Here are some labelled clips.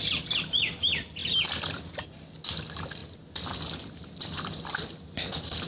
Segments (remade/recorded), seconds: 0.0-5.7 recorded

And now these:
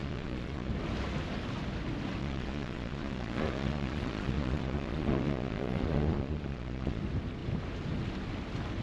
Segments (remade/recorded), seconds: 0.0-0.7 remade; 0.7-2.2 recorded; 2.2-7.0 remade; 7.0-8.8 recorded

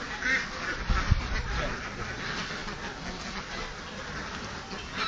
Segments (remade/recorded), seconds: 0.0-5.1 recorded

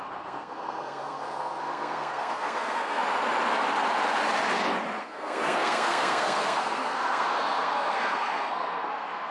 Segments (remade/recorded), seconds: 0.0-3.0 remade; 3.0-5.0 recorded; 5.0-9.3 remade